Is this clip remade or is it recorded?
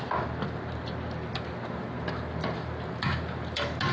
recorded